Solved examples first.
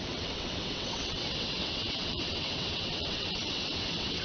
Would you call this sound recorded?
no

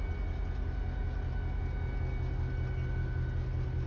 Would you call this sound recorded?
yes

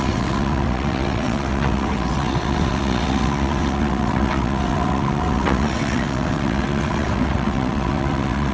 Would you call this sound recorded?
no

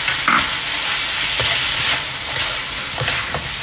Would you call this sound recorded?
yes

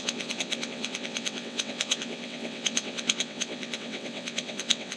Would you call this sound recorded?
no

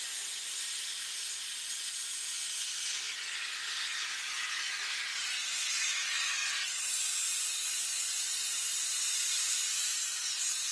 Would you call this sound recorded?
yes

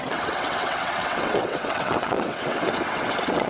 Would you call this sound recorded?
no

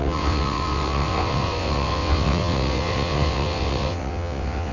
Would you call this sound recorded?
no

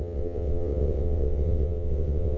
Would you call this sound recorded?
no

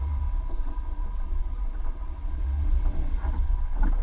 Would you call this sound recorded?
no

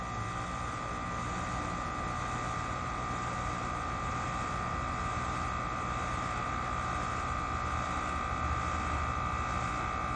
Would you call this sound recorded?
yes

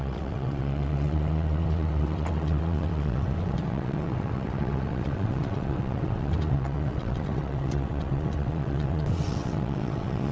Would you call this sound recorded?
no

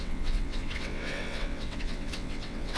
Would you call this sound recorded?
no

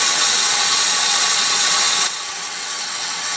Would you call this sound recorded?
no